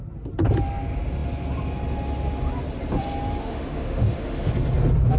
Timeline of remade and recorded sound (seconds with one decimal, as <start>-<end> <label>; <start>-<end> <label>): 0.0-3.4 recorded; 3.4-4.5 remade; 4.5-5.2 recorded